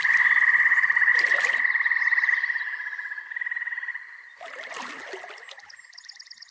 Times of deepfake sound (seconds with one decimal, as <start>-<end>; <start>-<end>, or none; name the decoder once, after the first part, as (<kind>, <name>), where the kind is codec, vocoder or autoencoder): none